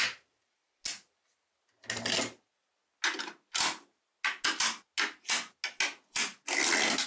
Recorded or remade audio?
recorded